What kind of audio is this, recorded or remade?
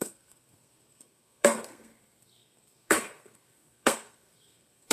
remade